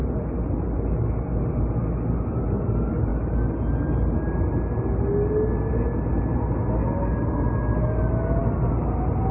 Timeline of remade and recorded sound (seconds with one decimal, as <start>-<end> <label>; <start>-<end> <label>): 0.0-9.3 recorded